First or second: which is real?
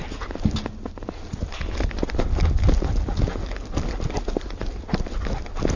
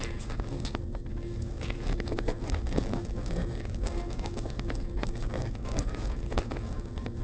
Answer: first